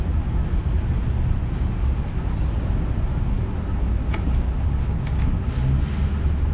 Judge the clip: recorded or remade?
recorded